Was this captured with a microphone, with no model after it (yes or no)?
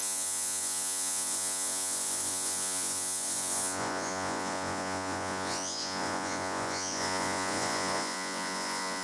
no